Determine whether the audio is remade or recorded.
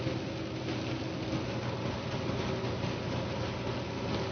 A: recorded